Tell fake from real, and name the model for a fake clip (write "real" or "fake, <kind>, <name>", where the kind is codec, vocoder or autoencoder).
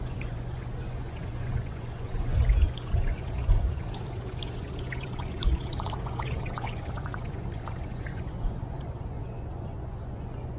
fake, vocoder, Vocos